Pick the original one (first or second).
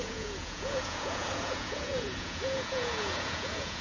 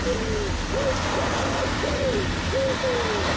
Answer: second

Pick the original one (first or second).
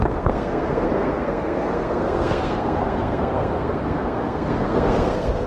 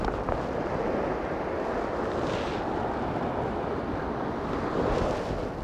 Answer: second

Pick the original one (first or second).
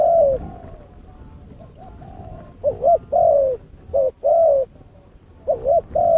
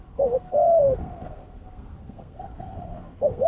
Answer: first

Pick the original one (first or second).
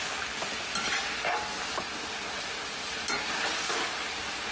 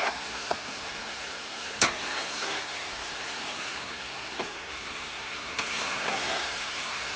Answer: first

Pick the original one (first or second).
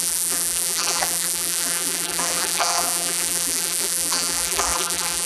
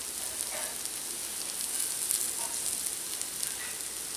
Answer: second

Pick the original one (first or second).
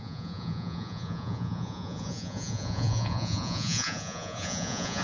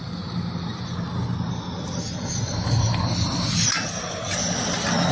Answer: second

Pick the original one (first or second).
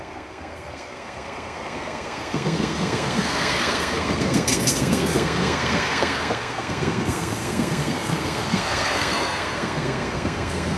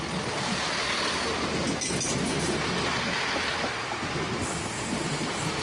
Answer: second